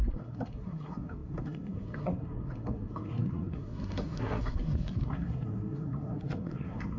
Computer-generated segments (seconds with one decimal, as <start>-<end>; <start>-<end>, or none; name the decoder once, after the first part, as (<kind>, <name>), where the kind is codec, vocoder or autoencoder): 0.0-7.0 (codec, SNAC)